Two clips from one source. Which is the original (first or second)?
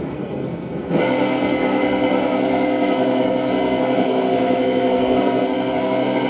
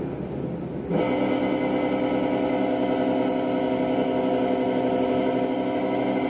second